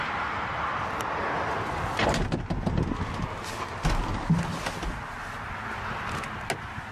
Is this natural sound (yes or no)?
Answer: yes